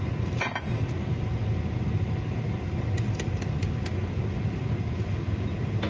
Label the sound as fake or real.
real